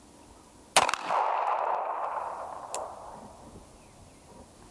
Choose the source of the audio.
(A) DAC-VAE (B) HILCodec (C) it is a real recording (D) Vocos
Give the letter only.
C